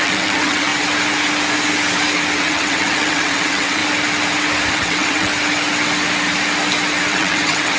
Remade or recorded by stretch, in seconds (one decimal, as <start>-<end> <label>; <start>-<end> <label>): 0.0-0.7 remade; 0.7-2.4 recorded; 2.4-3.8 remade; 3.8-4.7 recorded; 4.7-5.3 remade; 5.3-7.1 recorded; 7.1-7.8 remade